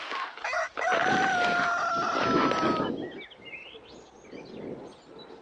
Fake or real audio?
real